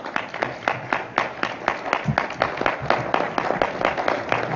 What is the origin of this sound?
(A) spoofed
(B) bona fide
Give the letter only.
B